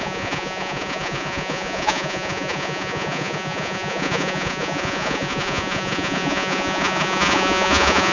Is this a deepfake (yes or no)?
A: yes